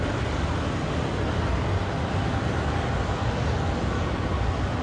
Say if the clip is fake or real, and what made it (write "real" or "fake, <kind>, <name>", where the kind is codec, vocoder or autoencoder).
real